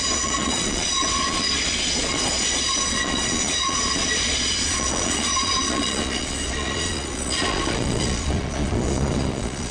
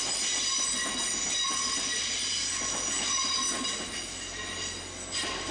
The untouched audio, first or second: second